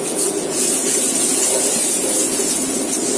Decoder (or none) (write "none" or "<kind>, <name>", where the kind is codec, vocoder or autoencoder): vocoder, Vocos